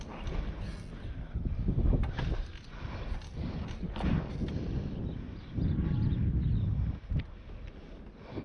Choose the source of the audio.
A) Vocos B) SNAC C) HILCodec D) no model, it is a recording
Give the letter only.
D